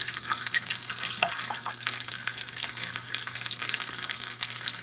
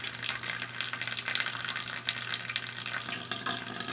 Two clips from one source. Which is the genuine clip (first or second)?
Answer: second